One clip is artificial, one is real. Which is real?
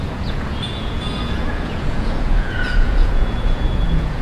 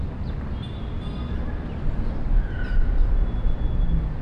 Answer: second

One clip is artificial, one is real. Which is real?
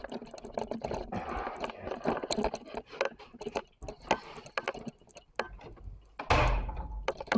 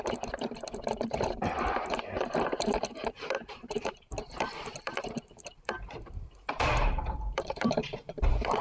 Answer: first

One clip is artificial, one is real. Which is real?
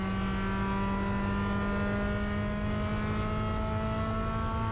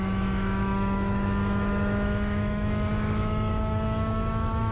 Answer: first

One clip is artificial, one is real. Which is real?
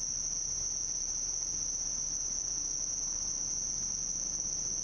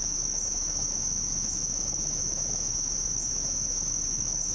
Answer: first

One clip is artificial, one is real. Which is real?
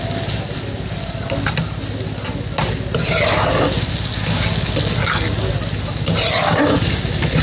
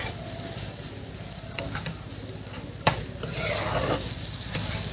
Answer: first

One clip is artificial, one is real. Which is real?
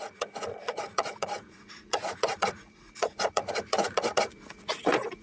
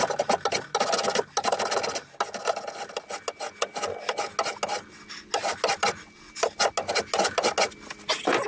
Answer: second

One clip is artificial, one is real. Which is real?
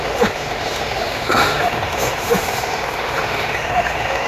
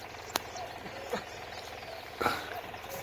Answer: second